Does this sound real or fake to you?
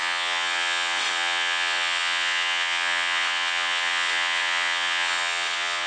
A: fake